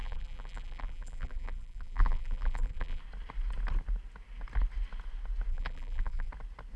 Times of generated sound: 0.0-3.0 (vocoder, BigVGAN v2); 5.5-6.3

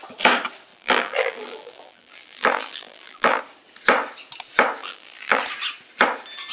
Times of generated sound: 0.7-3.4 (vocoder, BigVGAN v2); 4.8-5.4

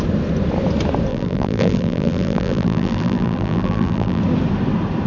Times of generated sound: 1.1-4.2 (vocoder, BigVGAN v2)